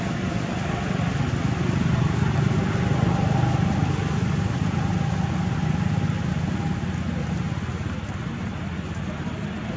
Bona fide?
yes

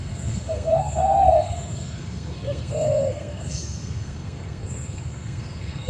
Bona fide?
no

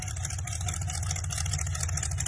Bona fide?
yes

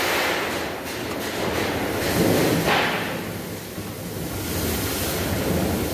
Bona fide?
yes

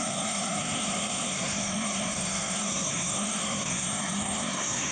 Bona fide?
no